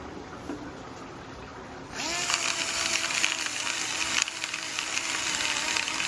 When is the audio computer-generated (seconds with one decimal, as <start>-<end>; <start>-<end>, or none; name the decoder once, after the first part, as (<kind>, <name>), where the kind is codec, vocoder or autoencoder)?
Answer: none